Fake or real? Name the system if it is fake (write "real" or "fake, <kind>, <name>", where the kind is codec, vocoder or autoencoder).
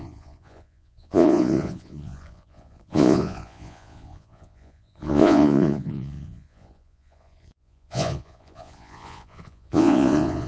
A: fake, vocoder, Vocos